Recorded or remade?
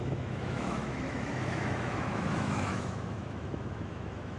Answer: remade